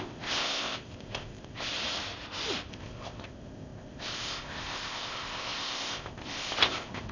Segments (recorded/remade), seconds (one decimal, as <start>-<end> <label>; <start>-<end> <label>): 0.0-1.7 remade; 1.7-2.7 recorded; 2.7-7.1 remade